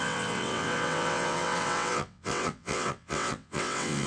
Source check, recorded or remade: remade